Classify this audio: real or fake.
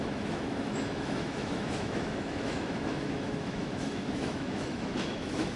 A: fake